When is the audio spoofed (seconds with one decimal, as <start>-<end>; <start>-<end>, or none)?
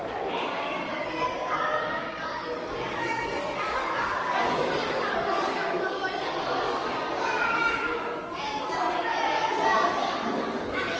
0.0-11.0